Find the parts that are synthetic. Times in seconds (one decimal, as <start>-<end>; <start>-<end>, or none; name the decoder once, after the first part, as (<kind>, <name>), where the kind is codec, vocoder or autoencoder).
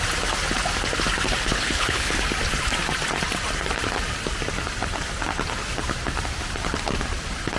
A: 1.5-2.2 (codec, HILCodec)